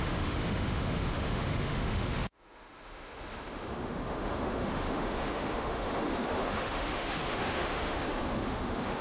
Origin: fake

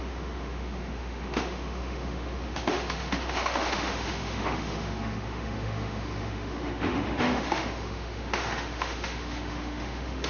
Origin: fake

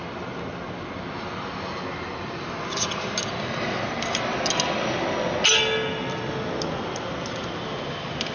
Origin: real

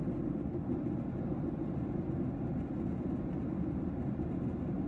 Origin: real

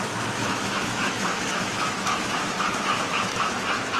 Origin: fake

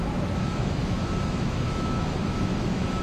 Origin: fake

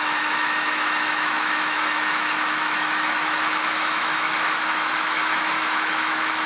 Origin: fake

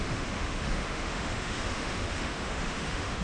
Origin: fake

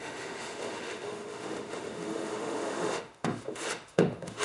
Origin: fake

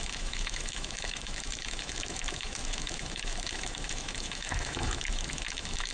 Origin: fake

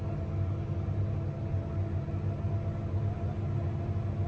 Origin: real